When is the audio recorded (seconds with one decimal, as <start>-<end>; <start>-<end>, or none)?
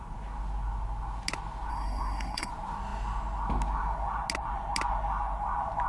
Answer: 0.0-1.7; 2.5-5.9